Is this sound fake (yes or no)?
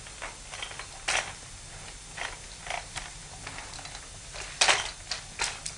no